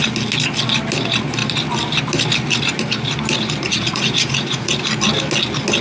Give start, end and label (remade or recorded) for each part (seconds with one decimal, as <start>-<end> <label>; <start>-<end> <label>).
0.0-3.7 recorded; 3.7-4.7 remade; 4.7-5.8 recorded